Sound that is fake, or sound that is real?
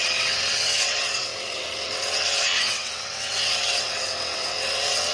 fake